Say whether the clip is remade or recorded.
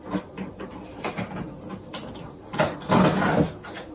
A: recorded